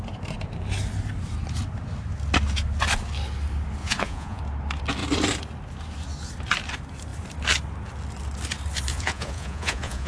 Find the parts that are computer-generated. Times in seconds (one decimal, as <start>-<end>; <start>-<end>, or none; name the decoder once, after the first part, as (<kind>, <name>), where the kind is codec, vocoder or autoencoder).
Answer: 3.8-4.4 (vocoder, Vocos); 8.9-10.1